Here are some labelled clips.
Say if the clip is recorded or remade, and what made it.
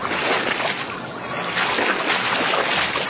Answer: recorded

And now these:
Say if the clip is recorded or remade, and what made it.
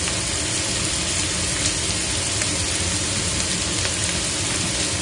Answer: recorded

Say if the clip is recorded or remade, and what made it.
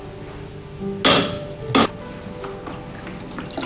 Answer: recorded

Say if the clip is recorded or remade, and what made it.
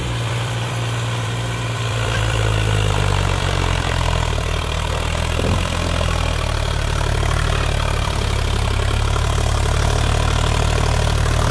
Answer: remade, vocoder, BigVGAN v2